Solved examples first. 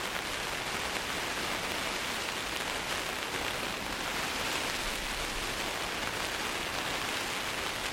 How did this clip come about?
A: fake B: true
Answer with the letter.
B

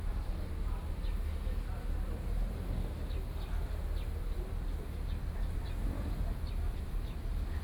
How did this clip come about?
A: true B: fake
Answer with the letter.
A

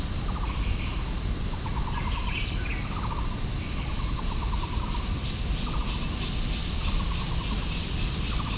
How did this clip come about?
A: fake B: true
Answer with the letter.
B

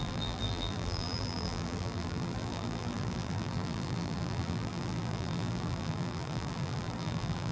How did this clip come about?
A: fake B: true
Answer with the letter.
A